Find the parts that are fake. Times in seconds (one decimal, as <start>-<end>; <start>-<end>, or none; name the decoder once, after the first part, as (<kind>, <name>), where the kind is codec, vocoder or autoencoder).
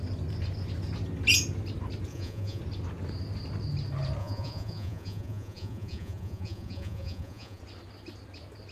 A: 2.1-2.6 (vocoder, Vocos); 4.2-7.6